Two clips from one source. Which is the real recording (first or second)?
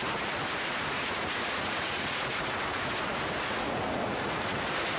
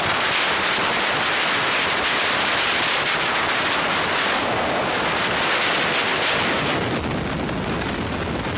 second